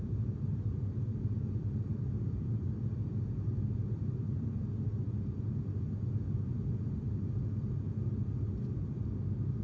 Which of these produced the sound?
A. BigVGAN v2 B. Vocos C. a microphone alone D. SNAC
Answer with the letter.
A